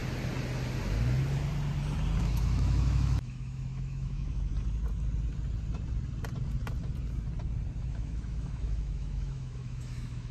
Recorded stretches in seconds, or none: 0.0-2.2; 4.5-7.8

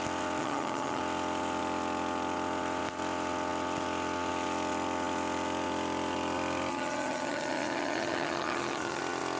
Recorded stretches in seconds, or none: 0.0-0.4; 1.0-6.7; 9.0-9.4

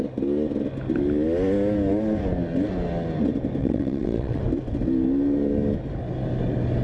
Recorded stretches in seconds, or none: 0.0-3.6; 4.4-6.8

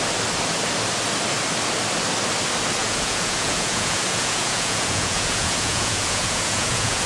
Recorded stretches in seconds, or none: 0.0-2.8